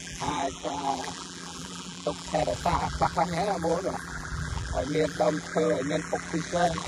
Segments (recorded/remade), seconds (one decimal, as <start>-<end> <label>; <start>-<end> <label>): 0.0-6.9 remade